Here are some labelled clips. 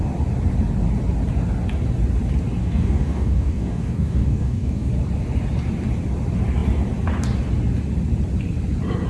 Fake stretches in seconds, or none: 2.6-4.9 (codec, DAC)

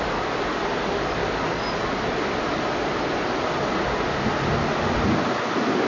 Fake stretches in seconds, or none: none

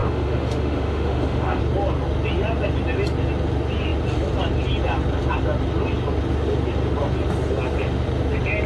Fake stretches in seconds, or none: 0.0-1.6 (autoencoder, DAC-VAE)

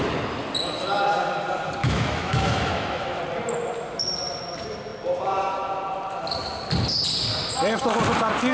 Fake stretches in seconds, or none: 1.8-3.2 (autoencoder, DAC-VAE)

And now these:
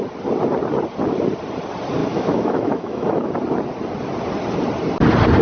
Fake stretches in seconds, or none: 2.0-3.3 (autoencoder, DAC-VAE)

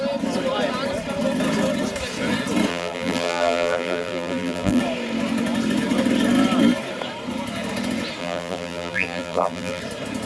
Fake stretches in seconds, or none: 2.7-4.8 (vocoder, BigVGAN v2); 8.2-9.8

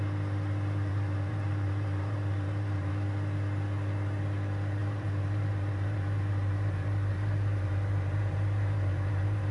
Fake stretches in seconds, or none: 0.9-2.9 (vocoder, BigVGAN v2); 4.8-9.5

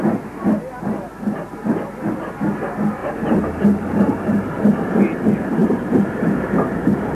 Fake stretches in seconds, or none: 3.0-5.0 (vocoder, BigVGAN v2); 5.6-7.1